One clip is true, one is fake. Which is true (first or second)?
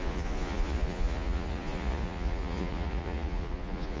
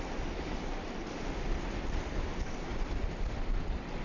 second